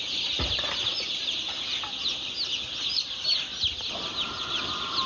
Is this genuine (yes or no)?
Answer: yes